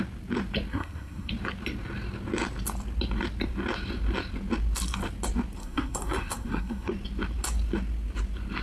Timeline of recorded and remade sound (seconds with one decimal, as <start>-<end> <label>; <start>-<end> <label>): 0.0-0.7 recorded; 0.7-1.3 remade; 1.3-5.6 recorded; 5.6-6.9 remade; 6.9-8.6 recorded